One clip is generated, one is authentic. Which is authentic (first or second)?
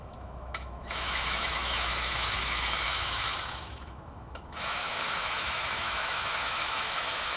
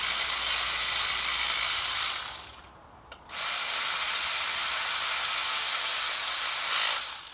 second